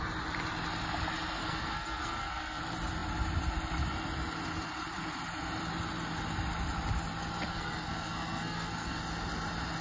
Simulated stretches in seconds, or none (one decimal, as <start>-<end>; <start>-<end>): 1.4-2.6; 7.5-9.0